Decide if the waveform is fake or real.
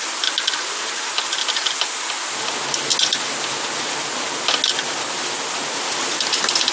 real